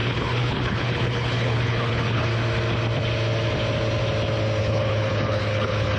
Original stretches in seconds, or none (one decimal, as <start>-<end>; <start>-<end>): 2.3-4.6